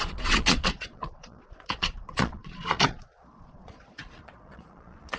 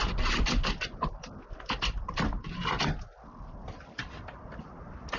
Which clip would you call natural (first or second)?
second